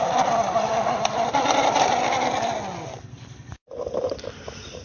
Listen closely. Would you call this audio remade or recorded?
remade